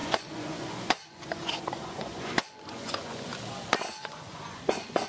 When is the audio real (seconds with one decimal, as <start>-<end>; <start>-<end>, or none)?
3.3-3.9